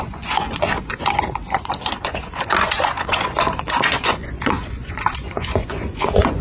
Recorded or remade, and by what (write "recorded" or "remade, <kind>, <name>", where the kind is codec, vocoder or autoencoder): remade, vocoder, Vocos